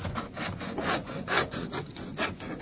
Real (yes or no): no